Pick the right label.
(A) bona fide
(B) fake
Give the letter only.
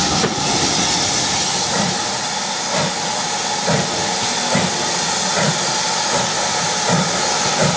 A